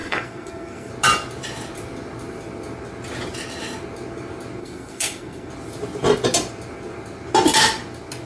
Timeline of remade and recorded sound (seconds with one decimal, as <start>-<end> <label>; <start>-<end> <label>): 0.0-0.9 remade; 0.9-4.6 recorded; 4.6-5.5 remade; 5.5-8.3 recorded